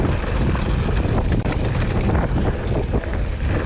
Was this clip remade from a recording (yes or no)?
no